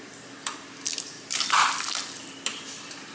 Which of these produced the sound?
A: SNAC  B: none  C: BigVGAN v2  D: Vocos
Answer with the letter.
B